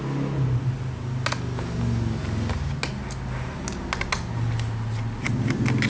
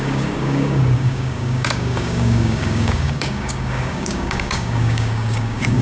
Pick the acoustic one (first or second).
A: first